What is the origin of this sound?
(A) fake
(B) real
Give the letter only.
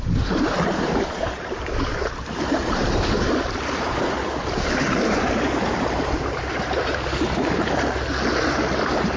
A